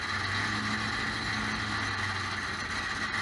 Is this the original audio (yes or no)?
yes